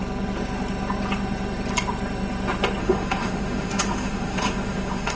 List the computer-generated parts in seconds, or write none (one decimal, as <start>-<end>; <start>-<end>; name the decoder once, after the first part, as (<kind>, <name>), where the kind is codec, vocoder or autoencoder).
2.8-5.2 (autoencoder, DAC-VAE)